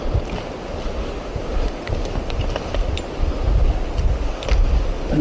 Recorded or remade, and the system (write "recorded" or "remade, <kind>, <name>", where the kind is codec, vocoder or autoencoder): recorded